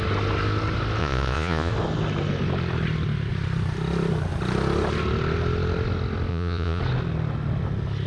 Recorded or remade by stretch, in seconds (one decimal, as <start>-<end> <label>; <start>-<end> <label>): 0.0-1.0 recorded; 1.0-1.7 remade; 1.7-6.3 recorded; 6.3-6.8 remade; 6.8-8.1 recorded

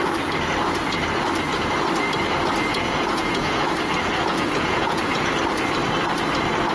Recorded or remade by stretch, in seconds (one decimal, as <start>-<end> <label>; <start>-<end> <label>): 0.0-2.7 recorded; 2.7-3.7 remade; 3.7-4.3 recorded; 4.3-5.3 remade; 5.3-6.7 recorded

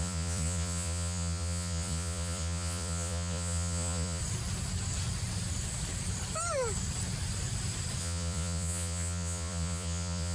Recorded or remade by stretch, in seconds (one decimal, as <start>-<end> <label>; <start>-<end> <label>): 0.0-4.2 remade; 4.2-8.0 recorded; 8.0-10.3 remade

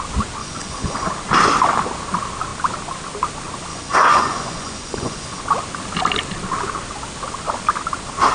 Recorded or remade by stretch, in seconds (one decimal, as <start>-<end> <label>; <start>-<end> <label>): 0.0-0.4 recorded; 0.4-1.1 remade; 1.1-3.7 recorded; 3.7-5.4 remade; 5.4-8.3 recorded

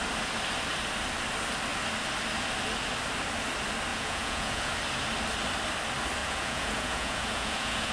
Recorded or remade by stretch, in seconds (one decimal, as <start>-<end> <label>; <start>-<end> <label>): 0.0-3.9 recorded; 3.9-4.7 remade; 4.7-6.2 recorded; 6.2-7.9 remade

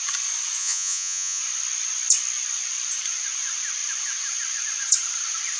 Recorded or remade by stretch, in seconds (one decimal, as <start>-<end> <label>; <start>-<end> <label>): 0.0-0.6 recorded; 0.6-1.4 remade; 1.4-5.6 recorded